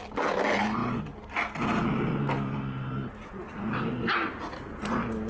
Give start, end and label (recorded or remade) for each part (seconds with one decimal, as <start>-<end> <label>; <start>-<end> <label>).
0.0-5.3 recorded